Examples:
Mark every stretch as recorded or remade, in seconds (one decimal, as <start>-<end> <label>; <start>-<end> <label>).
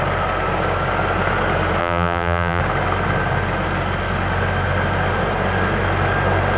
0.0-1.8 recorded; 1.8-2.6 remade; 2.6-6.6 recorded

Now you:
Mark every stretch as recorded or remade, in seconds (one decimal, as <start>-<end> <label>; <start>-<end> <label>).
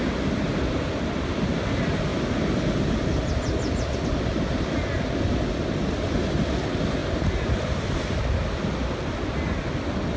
0.0-10.2 recorded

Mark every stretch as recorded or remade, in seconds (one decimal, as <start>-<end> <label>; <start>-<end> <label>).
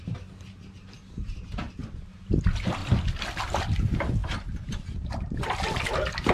0.0-1.8 remade; 1.8-2.4 recorded; 2.4-2.8 remade; 2.8-3.4 recorded; 3.4-6.3 remade